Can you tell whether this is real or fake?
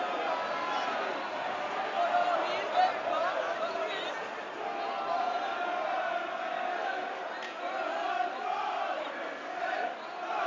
real